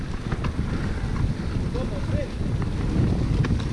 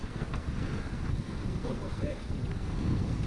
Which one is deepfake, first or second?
second